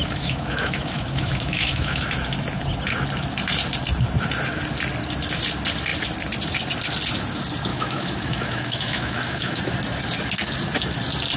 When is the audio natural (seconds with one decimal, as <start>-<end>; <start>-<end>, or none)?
2.0-7.7; 9.6-11.4